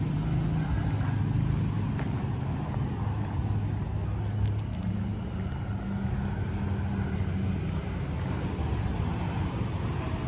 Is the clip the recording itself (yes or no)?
yes